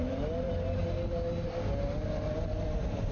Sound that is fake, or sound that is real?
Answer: real